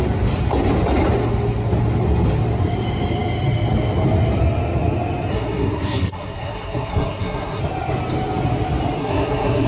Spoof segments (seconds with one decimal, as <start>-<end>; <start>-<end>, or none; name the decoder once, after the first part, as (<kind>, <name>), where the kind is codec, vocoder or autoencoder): 5.3-7.6 (codec, SNAC); 9.0-9.7